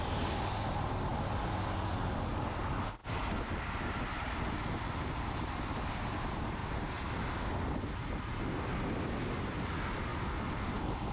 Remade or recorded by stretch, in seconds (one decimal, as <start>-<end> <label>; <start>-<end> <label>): 0.0-11.1 recorded